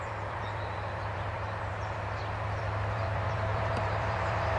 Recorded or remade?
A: remade